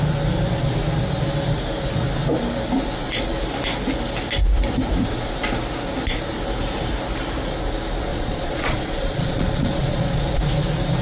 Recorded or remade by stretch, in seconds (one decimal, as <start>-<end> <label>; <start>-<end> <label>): 0.0-8.1 recorded; 8.1-10.4 remade; 10.4-11.0 recorded